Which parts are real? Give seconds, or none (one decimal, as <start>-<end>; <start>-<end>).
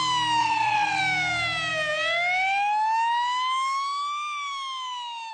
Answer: 0.0-0.4; 1.0-5.3